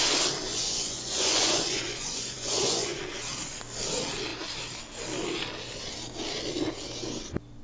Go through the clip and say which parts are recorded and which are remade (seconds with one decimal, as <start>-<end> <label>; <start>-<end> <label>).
0.0-0.5 recorded; 0.5-3.0 remade; 3.0-7.6 recorded